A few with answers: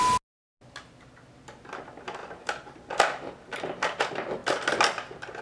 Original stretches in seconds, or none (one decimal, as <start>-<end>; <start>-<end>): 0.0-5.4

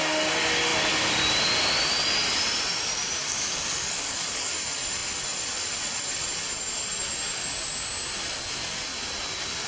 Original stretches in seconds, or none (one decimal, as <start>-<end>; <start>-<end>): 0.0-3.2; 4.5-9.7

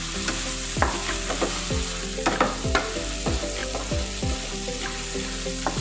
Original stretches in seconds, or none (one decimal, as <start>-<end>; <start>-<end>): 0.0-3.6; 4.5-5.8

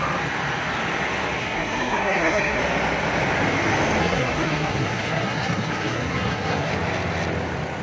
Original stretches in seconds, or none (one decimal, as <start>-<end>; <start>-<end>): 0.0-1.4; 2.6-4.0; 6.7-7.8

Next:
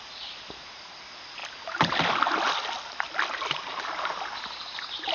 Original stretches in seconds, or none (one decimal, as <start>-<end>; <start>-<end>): 0.0-5.1

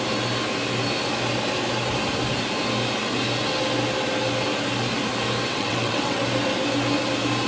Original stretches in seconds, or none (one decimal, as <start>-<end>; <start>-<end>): 0.0-5.5; 6.2-7.5

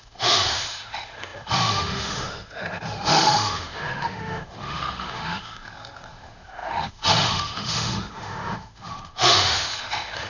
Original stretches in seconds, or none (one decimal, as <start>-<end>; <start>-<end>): none

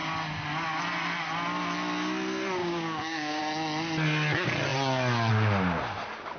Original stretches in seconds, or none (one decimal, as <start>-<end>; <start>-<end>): 0.0-2.6; 3.4-6.4